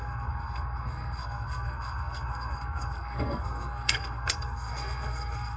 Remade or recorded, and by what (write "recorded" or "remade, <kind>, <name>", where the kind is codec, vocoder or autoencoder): remade, codec, SNAC